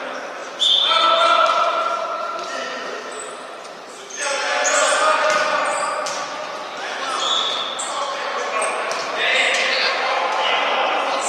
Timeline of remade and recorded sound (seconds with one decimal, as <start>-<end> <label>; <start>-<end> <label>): 0.0-9.3 recorded; 9.3-10.5 remade; 10.5-11.3 recorded